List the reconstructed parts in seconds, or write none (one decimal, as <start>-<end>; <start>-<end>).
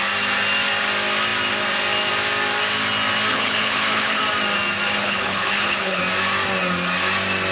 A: 3.3-4.2; 5.0-6.0